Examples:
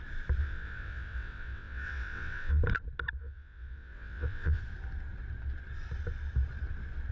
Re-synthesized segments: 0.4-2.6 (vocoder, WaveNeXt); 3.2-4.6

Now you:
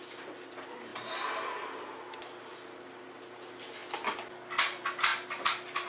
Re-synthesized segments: none

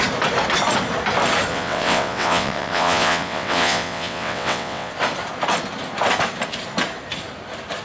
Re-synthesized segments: 1.5-4.9 (vocoder, WaveNeXt)